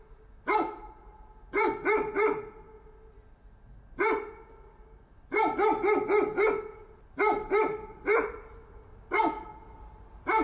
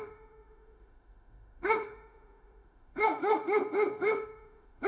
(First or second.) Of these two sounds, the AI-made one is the second